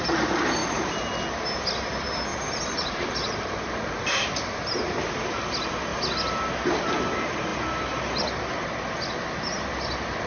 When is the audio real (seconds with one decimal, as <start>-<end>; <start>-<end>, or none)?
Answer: 0.0-0.6; 1.1-2.3; 5.1-10.3